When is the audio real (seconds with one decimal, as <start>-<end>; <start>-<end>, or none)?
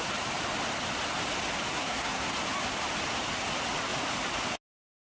0.0-1.7; 2.3-5.1